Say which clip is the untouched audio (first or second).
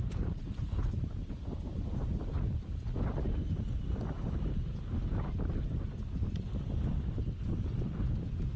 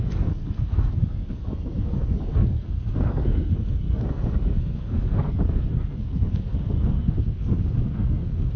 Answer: first